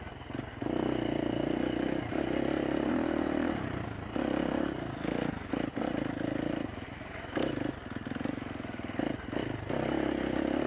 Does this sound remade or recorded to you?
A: recorded